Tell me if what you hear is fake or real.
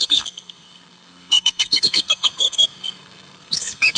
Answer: fake